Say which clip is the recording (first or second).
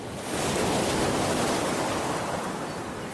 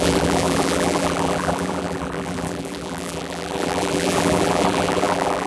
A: first